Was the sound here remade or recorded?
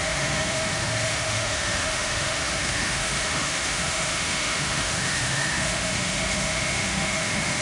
remade